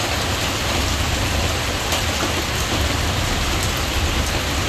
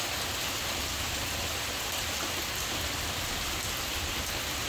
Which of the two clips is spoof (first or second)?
second